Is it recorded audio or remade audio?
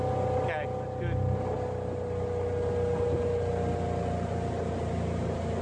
recorded